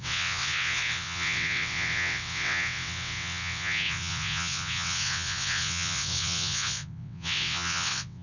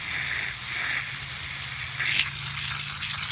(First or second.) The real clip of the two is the second